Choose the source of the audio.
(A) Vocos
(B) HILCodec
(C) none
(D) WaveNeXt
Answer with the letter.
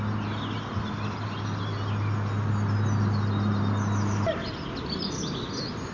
C